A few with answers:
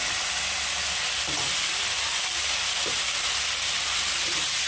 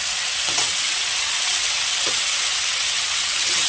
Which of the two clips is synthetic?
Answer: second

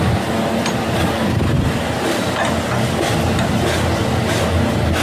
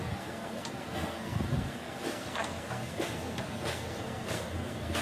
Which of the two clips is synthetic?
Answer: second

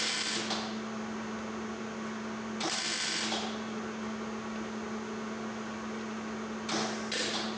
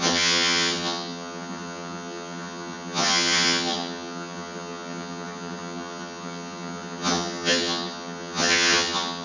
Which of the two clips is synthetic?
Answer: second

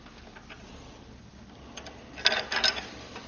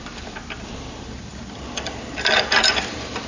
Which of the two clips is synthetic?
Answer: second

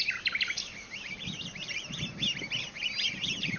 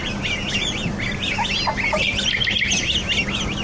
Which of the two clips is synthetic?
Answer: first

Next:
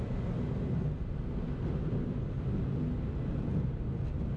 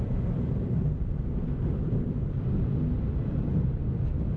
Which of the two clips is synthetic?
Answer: second